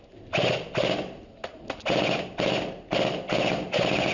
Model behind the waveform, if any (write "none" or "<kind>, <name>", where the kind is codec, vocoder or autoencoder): none